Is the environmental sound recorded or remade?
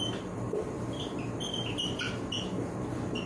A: remade